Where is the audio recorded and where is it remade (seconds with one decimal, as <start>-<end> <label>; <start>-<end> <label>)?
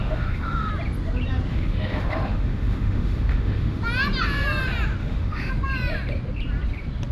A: 0.0-0.7 remade; 0.7-1.5 recorded; 1.5-3.8 remade; 3.8-5.0 recorded; 5.0-5.5 remade; 5.5-7.1 recorded